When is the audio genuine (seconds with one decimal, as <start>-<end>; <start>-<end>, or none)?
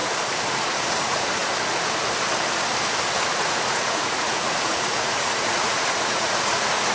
0.0-0.5; 1.4-3.3